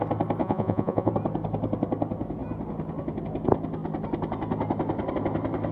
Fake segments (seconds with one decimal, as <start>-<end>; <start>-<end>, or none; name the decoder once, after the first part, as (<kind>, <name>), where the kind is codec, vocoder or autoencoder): 0.4-1.1 (vocoder, Vocos)

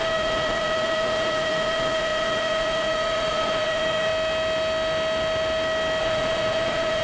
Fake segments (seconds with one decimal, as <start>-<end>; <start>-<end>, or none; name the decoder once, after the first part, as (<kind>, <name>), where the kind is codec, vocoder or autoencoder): 0.0-4.1 (vocoder, Vocos); 6.0-7.0

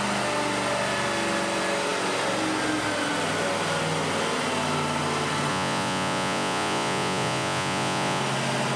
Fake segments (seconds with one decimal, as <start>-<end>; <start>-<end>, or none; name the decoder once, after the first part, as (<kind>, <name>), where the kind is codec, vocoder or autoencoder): 5.5-8.2 (vocoder, Vocos)

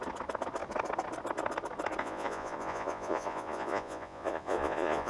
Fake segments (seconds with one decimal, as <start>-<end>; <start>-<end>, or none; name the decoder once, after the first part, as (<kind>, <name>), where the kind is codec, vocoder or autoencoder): 2.0-5.1 (vocoder, Vocos)

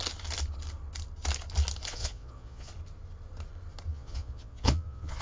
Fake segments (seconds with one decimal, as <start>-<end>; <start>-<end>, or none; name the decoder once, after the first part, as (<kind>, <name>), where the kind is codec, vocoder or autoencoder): 1.9-2.7 (vocoder, Vocos); 3.9-5.2

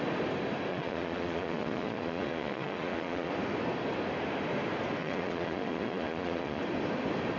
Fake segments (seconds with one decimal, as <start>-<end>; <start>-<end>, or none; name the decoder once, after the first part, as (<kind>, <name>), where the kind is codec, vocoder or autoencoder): 0.7-3.3 (vocoder, Vocos); 5.0-6.6